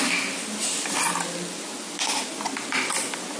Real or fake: real